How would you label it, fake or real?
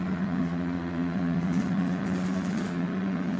fake